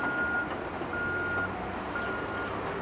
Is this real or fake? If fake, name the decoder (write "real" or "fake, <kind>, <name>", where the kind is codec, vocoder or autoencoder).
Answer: real